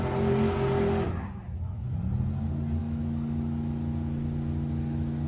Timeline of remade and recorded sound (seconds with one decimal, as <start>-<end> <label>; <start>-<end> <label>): 0.0-1.4 recorded; 1.4-1.9 remade; 1.9-2.8 recorded; 2.8-5.3 remade